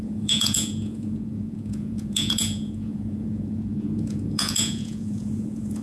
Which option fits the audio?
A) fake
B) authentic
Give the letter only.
A